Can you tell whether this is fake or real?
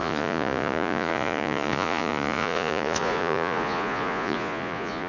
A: fake